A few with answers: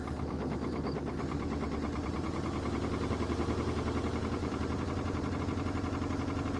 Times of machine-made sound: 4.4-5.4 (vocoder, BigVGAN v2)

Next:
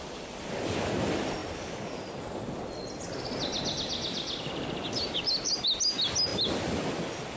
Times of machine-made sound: none